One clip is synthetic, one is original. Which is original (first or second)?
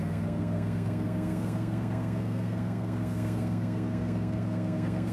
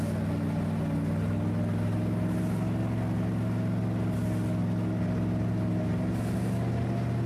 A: second